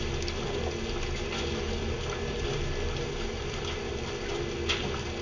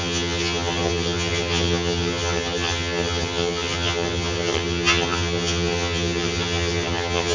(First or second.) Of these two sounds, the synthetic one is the second